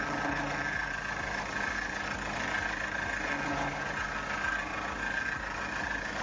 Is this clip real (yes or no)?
yes